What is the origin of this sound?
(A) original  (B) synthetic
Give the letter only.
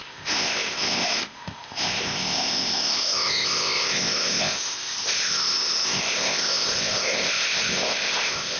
B